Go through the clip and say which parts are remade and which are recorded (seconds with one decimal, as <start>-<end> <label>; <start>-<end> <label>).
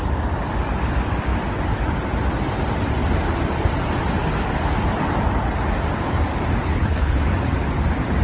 0.0-6.7 recorded; 6.7-7.2 remade; 7.2-8.2 recorded